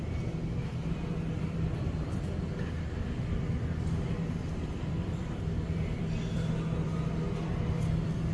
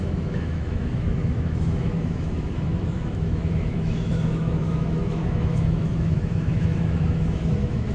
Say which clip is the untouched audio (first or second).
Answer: first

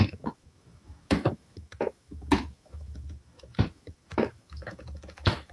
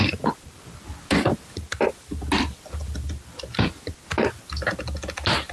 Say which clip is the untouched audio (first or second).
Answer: second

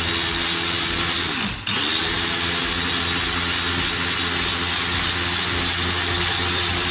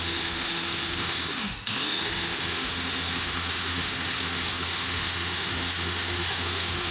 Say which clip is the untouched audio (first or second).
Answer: first